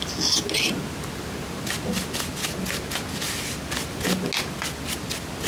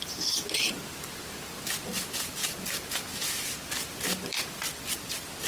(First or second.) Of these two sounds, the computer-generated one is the second